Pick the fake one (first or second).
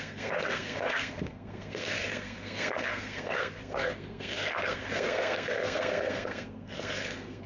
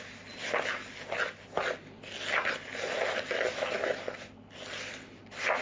first